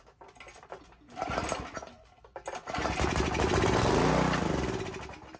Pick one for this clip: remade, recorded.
recorded